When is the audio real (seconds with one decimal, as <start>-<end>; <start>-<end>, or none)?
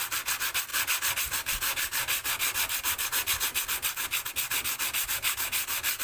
0.0-6.0